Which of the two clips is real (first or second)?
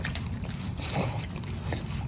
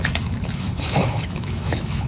first